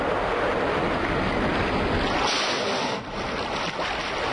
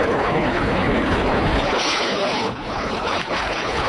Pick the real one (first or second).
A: first